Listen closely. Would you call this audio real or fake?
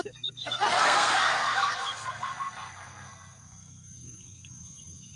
fake